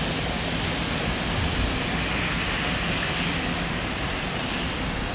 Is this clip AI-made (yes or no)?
no